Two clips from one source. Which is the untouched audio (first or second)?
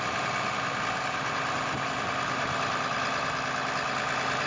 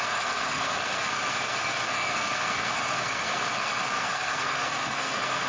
first